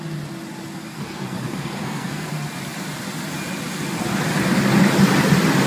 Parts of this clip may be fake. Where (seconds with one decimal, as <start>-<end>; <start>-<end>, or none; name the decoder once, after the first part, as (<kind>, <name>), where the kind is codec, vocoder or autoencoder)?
0.9-2.3 (codec, SNAC)